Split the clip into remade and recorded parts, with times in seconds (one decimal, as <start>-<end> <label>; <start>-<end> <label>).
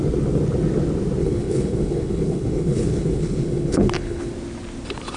0.0-1.2 recorded; 1.2-4.3 remade; 4.3-5.2 recorded